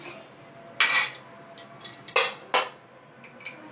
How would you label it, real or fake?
real